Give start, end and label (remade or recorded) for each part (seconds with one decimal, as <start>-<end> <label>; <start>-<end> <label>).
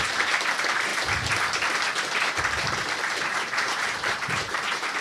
0.0-0.9 remade; 0.9-3.0 recorded; 3.0-5.0 remade